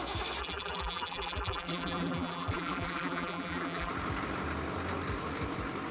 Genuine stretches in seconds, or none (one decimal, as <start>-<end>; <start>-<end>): 0.0-0.4; 3.9-5.9